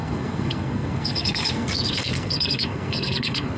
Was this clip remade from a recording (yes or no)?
yes